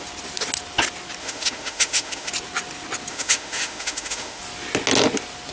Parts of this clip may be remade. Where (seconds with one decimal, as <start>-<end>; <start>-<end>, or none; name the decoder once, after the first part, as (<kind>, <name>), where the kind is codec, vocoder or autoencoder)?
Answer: 1.2-2.3 (autoencoder, DAC-VAE); 3.1-4.4

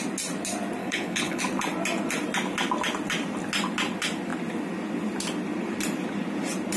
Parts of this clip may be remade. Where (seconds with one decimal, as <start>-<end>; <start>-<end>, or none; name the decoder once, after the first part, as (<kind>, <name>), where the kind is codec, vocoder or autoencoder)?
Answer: 0.8-1.4 (codec, HILCodec)